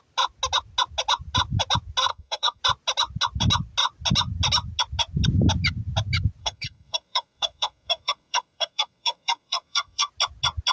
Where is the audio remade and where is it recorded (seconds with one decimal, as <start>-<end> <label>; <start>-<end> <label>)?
0.0-2.1 recorded; 2.1-2.6 remade; 2.6-6.4 recorded; 6.4-10.1 remade; 10.1-10.7 recorded